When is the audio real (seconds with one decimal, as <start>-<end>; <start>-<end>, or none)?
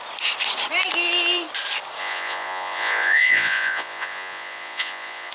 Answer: 0.0-2.0